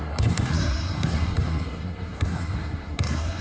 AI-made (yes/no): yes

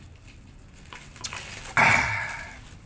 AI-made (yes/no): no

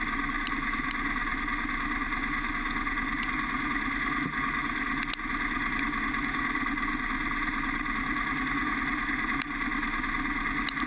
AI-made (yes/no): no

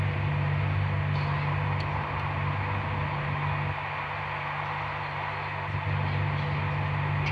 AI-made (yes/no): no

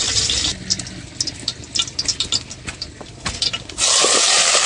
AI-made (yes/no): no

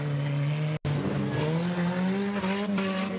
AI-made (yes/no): no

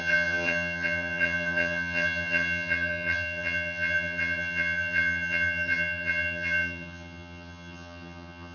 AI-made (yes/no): yes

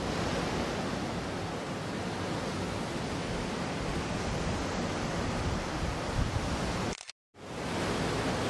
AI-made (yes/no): no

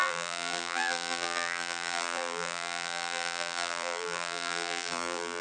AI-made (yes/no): yes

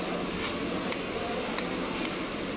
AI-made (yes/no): no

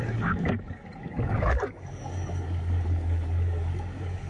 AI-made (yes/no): yes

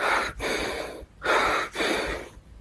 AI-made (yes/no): no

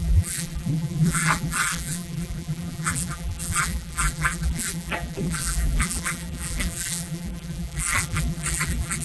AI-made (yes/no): yes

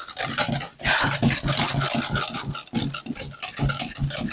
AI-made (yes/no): no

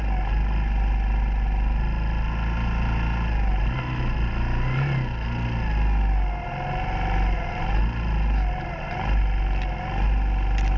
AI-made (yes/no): no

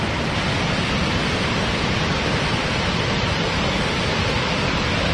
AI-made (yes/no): no